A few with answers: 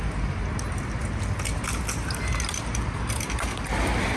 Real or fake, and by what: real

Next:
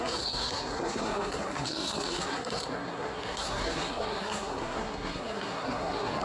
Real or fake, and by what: fake, codec, SNAC